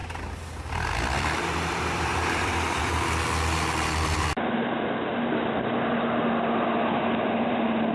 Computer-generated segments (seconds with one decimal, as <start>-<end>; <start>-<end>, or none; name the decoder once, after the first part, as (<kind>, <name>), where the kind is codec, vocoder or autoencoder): 0.0-2.8 (vocoder, BigVGAN v2); 4.3-5.7